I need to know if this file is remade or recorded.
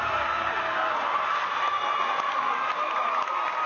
recorded